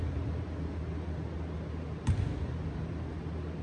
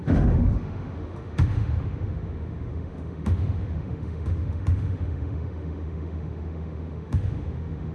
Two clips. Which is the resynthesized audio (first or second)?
second